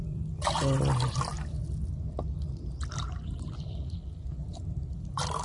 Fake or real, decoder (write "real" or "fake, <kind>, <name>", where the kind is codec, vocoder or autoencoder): real